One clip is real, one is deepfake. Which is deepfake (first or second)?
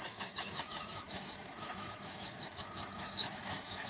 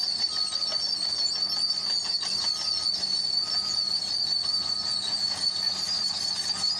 first